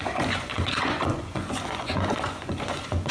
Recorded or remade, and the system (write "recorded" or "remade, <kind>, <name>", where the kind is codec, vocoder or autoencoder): remade, vocoder, Vocos